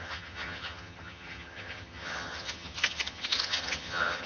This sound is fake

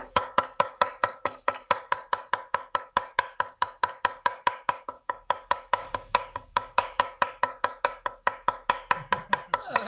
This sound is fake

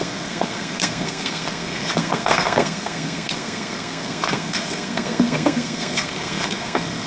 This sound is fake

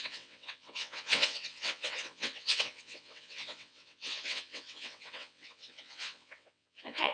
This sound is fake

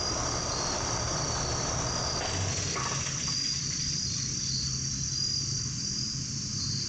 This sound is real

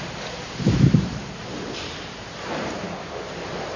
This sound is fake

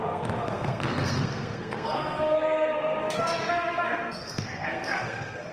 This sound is fake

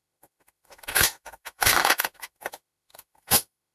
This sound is fake